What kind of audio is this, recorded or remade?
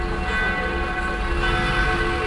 recorded